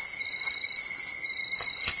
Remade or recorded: recorded